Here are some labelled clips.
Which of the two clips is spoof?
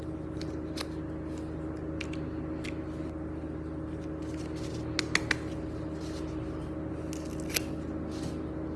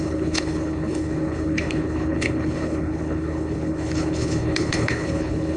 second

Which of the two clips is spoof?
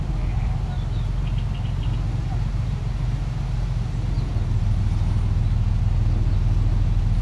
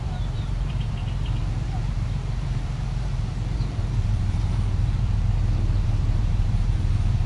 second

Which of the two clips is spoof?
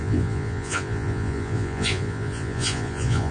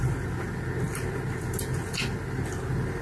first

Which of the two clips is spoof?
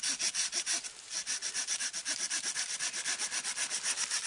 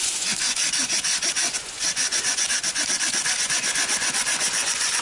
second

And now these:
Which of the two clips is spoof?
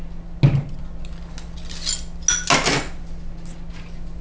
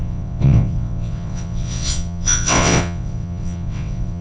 second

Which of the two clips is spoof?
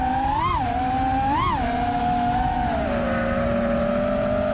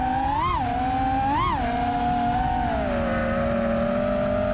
first